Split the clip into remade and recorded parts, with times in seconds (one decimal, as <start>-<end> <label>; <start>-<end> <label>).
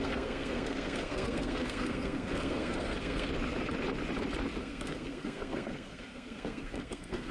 0.0-3.3 remade; 3.3-4.6 recorded; 4.6-7.3 remade